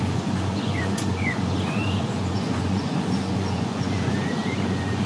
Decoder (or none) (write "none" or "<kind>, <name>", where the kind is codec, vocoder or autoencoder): vocoder, Vocos